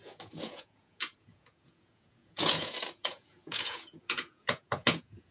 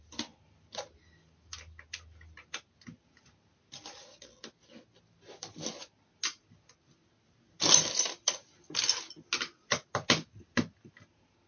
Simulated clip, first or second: first